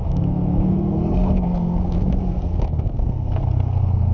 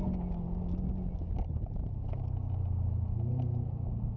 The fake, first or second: first